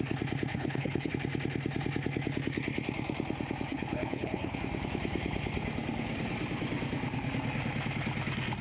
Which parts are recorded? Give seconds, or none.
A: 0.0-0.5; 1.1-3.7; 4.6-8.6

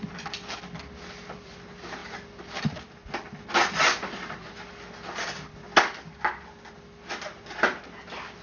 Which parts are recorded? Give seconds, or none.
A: 0.0-8.4

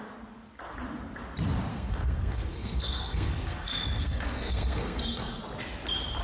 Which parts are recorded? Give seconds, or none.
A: 0.0-1.7; 5.4-6.2

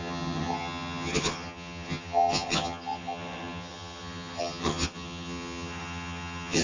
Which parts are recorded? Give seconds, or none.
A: none

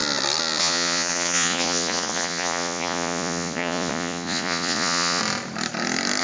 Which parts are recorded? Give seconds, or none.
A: 0.0-0.6; 5.2-6.2

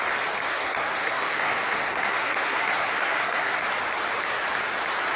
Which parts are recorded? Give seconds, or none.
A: 0.0-0.5; 3.6-5.2